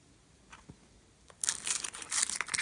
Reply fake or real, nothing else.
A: real